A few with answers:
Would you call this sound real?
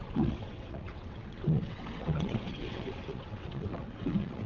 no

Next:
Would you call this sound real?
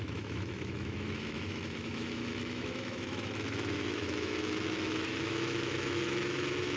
no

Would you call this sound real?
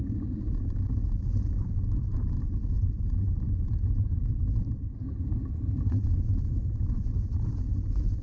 no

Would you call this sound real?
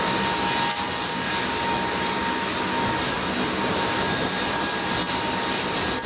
yes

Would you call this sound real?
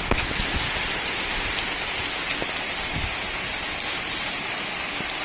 yes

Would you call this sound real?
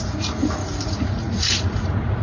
no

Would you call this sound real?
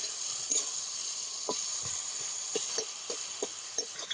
yes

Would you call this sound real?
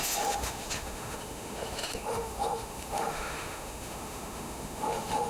no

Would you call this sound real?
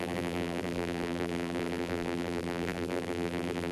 no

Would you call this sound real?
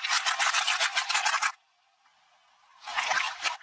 yes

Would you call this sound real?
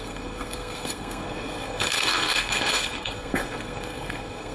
no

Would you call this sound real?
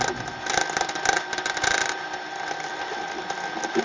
yes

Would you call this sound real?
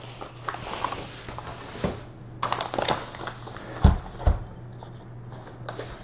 yes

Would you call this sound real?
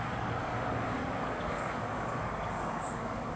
no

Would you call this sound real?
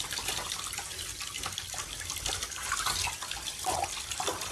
no